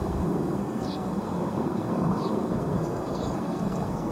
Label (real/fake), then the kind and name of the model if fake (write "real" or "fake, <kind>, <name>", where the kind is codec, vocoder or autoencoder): fake, codec, SNAC